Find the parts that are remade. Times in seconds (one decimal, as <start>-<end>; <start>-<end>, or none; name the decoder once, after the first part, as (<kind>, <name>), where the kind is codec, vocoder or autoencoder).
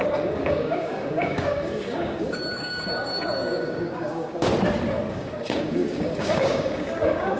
0.0-4.5 (codec, DAC); 5.1-7.4